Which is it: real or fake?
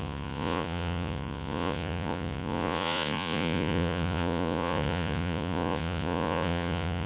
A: fake